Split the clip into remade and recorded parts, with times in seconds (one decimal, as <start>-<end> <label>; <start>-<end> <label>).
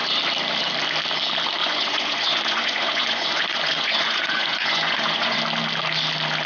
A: 0.0-1.6 recorded; 1.6-5.4 remade; 5.4-6.5 recorded